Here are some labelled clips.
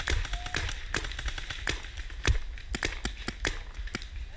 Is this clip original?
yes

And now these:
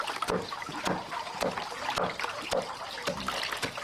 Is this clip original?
yes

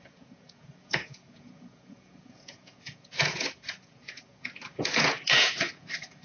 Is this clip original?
no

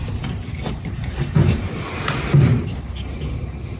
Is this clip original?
no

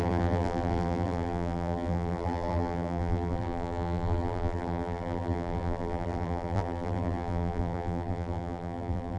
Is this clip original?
no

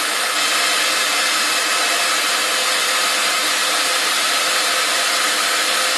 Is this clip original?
yes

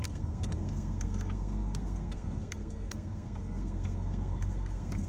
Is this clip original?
no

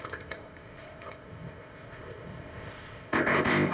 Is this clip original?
no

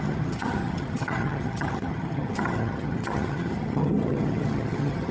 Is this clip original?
no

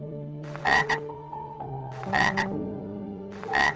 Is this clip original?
no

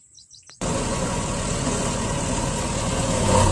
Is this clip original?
no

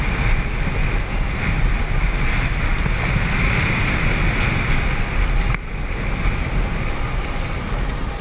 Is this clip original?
yes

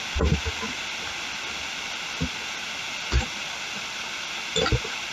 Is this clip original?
yes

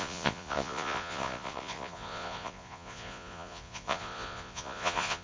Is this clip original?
no